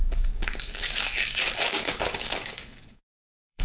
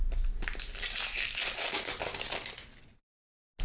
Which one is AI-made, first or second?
first